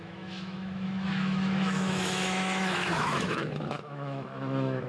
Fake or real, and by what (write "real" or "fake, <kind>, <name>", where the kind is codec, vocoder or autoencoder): fake, autoencoder, DAC-VAE